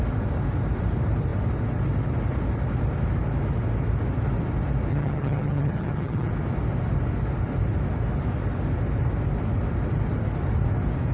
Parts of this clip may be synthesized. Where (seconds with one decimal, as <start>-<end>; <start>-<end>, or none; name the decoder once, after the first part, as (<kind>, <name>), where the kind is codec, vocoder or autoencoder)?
4.9-6.3 (vocoder, HiFi-GAN)

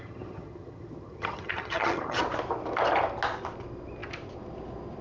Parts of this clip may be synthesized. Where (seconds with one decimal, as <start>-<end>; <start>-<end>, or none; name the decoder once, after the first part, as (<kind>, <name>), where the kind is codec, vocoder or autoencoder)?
0.0-2.2 (vocoder, HiFi-GAN)

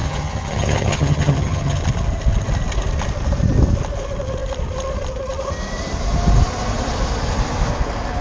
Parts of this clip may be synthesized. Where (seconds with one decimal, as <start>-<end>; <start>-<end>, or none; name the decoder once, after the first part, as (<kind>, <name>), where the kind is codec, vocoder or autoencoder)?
0.0-1.8 (vocoder, HiFi-GAN)

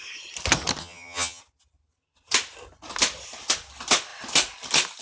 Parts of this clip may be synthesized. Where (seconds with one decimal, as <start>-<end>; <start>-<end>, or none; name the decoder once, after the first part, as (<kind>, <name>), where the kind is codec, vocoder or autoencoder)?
0.8-1.4 (vocoder, HiFi-GAN)

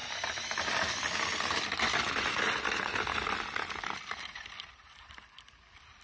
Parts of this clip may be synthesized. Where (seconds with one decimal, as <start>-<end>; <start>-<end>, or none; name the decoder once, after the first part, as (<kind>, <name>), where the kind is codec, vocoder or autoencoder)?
none

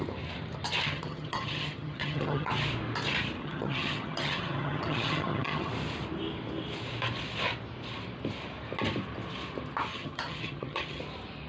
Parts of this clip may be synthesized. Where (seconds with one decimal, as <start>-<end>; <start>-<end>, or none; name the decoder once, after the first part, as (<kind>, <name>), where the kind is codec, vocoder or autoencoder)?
0.8-2.5 (vocoder, HiFi-GAN); 3.4-5.7; 9.9-11.0

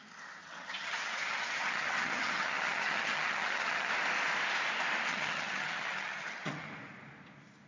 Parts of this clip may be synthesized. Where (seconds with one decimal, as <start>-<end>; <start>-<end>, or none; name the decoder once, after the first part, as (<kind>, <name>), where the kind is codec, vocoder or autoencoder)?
0.4-3.9 (vocoder, HiFi-GAN); 5.1-6.7

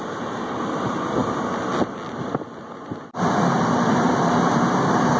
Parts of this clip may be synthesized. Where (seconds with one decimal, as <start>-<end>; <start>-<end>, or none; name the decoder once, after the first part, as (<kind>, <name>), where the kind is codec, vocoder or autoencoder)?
none